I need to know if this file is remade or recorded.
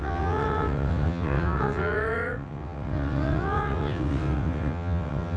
remade